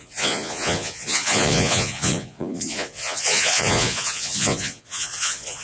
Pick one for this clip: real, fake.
fake